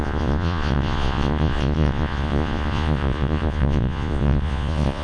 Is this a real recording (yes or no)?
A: no